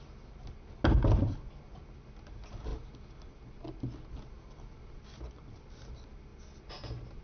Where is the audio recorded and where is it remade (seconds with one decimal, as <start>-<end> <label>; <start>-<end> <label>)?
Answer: 0.0-7.2 recorded

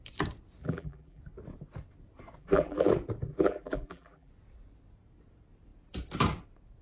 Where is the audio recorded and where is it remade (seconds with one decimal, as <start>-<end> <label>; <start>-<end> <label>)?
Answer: 0.0-0.6 recorded; 0.6-1.2 remade; 1.2-2.4 recorded; 2.4-2.9 remade; 2.9-3.3 recorded; 3.3-4.3 remade; 4.3-6.8 recorded

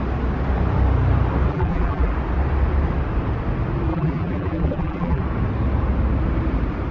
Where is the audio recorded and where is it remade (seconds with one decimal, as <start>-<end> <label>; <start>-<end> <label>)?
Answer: 0.0-1.5 recorded; 1.5-2.1 remade; 2.1-3.9 recorded; 3.9-5.2 remade; 5.2-6.9 recorded

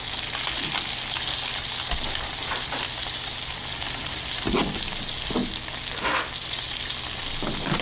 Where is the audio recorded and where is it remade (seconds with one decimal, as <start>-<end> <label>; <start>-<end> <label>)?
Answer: 0.0-7.8 recorded

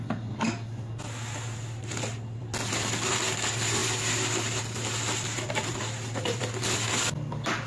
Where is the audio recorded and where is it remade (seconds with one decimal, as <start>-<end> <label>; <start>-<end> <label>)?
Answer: 0.0-7.7 recorded

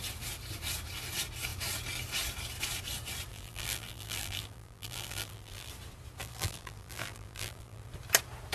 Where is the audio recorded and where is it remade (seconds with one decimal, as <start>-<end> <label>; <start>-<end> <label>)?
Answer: 0.0-3.3 recorded; 3.3-5.7 remade; 5.7-6.2 recorded; 6.2-7.9 remade; 7.9-8.5 recorded